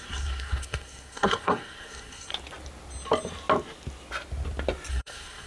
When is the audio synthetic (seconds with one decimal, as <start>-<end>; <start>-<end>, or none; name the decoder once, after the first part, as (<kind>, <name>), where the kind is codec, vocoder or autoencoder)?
0.0-2.3 (codec, SNAC); 4.9-5.5